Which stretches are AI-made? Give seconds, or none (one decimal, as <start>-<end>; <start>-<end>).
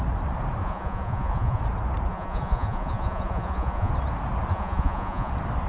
0.6-1.6; 2.1-3.9; 4.5-5.3